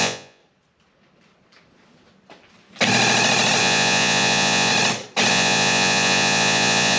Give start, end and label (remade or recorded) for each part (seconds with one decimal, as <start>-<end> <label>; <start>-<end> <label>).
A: 0.0-0.4 remade; 0.4-3.6 recorded; 3.6-4.7 remade; 4.7-5.3 recorded; 5.3-7.0 remade